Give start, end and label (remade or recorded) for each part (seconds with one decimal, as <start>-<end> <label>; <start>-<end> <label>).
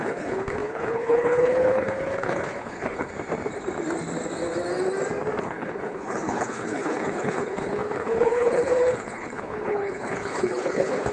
0.0-3.1 remade; 3.1-5.4 recorded; 5.4-11.1 remade